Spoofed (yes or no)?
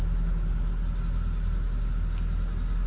no